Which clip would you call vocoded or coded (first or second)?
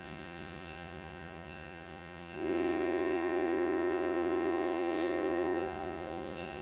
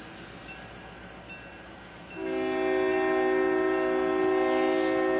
first